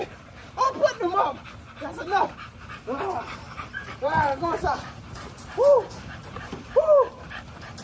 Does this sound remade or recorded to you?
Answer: remade